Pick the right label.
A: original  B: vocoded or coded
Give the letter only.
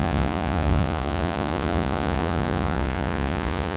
B